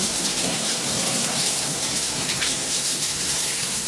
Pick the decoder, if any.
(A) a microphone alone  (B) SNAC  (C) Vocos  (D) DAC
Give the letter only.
B